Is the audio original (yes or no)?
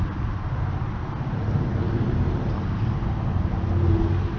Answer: yes